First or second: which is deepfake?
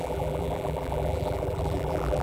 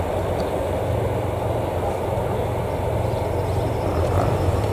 first